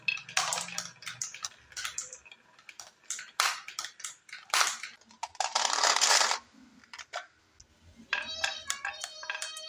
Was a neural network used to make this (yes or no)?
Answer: no